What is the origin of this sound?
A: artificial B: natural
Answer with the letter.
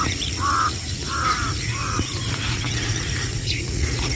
A